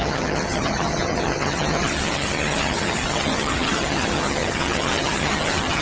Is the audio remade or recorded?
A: remade